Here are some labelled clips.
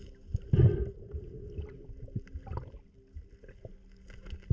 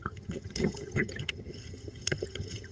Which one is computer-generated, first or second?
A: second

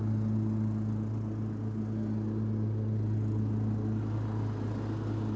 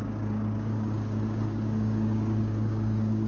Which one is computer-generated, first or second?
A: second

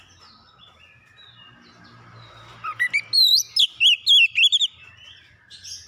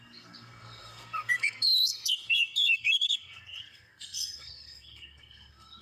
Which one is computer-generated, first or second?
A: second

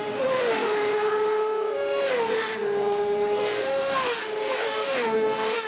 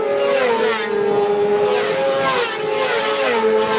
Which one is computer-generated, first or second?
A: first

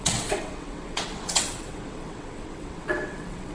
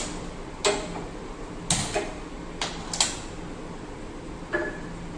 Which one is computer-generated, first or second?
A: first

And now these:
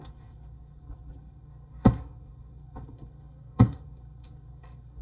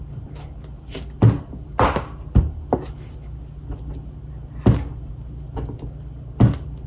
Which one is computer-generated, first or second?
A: first